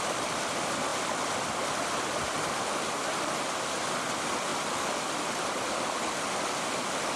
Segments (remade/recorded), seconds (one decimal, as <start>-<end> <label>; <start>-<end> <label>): 0.0-7.2 recorded